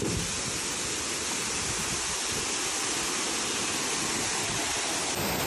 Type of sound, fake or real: real